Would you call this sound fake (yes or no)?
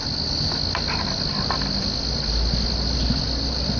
no